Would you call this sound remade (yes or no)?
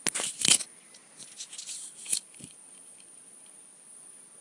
no